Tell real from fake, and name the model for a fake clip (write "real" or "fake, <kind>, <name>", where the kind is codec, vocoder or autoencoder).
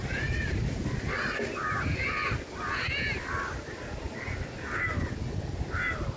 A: real